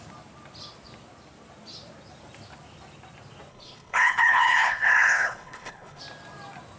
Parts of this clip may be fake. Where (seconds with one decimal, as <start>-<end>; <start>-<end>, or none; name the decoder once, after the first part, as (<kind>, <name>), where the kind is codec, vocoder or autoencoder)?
3.5-6.0 (codec, HILCodec)